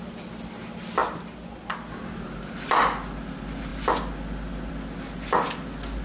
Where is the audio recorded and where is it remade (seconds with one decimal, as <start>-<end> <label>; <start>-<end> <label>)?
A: 0.0-6.0 recorded